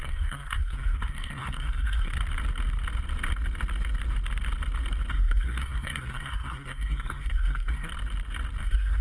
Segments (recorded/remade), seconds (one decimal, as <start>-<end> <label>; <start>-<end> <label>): 0.0-2.1 remade; 2.1-5.1 recorded; 5.1-7.9 remade; 7.9-8.6 recorded; 8.6-9.0 remade